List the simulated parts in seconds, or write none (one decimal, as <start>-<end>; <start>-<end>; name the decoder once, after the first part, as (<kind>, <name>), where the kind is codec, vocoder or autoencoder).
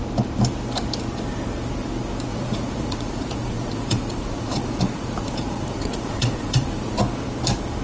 2.3-7.0 (vocoder, Vocos)